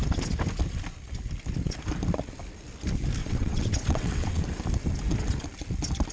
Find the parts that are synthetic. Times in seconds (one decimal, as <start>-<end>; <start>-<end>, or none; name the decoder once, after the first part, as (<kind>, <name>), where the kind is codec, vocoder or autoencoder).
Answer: 3.2-4.4 (vocoder, WaveNeXt)